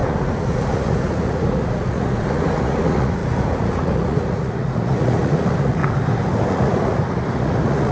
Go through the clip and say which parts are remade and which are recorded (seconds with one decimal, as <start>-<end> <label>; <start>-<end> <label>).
0.0-5.8 remade; 5.8-6.5 recorded; 6.5-7.9 remade